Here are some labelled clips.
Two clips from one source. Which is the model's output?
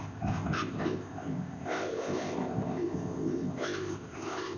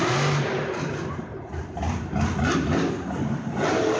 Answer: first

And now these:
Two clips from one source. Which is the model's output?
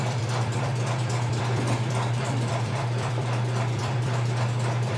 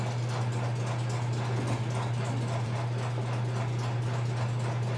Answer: first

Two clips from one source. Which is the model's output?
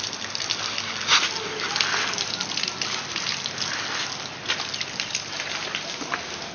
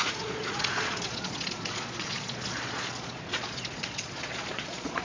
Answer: second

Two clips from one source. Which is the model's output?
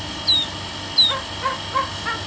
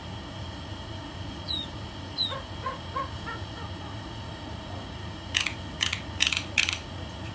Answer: second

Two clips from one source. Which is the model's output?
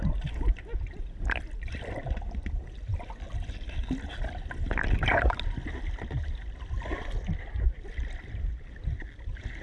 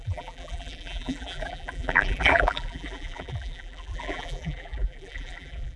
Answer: second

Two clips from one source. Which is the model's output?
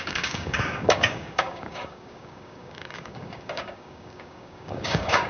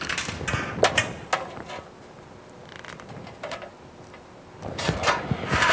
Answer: first